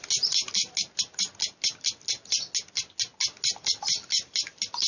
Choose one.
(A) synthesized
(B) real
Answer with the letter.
B